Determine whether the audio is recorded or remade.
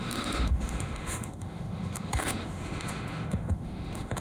remade